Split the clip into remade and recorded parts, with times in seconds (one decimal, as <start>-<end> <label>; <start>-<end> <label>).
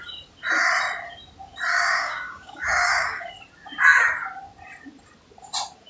0.0-1.7 recorded; 1.7-3.3 remade; 3.3-5.9 recorded